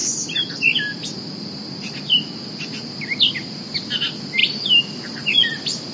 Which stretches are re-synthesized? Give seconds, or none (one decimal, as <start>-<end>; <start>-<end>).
none